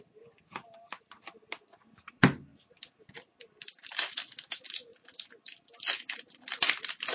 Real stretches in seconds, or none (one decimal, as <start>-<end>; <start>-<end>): 0.0-7.1